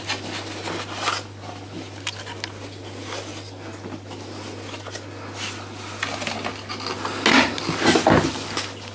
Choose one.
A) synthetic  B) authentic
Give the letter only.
B